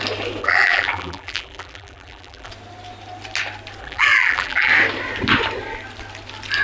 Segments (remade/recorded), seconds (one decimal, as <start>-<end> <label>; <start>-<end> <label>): 0.0-0.4 recorded; 0.4-2.5 remade; 2.5-3.8 recorded; 3.8-4.7 remade; 4.7-6.6 recorded